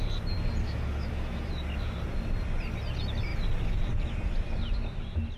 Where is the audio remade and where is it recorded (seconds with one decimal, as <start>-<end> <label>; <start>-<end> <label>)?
0.0-0.6 recorded; 0.6-1.5 remade; 1.5-5.4 recorded